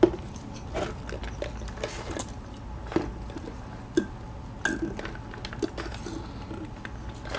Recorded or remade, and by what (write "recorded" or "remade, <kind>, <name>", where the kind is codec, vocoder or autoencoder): recorded